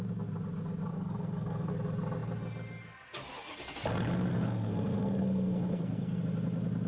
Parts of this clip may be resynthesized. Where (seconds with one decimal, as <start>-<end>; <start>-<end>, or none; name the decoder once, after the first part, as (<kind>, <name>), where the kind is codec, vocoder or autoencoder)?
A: 0.9-1.7 (codec, SNAC); 4.3-6.2

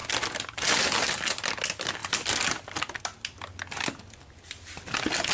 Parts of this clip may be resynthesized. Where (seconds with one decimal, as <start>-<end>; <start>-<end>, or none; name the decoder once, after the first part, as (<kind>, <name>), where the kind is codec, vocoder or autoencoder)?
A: none